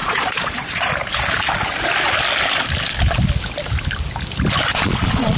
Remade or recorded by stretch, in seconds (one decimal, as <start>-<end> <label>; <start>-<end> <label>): 0.0-0.9 remade; 0.9-4.7 recorded; 4.7-5.4 remade